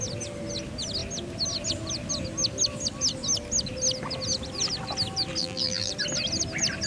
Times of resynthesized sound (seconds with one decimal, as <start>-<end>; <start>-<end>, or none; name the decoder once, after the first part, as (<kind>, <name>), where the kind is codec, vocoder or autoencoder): 5.4-5.9 (vocoder, BigVGAN v2)